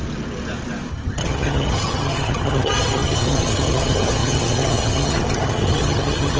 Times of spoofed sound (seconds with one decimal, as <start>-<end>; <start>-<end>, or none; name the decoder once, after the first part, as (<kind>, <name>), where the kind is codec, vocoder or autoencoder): 0.9-6.4 (vocoder, HiFi-GAN)